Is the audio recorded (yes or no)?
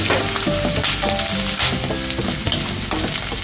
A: yes